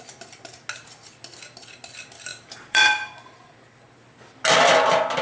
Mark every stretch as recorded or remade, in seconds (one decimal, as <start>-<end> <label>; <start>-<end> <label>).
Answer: 0.0-2.3 recorded; 2.3-2.8 remade; 2.8-5.2 recorded